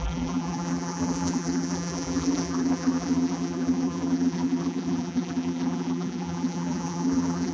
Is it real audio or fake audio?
fake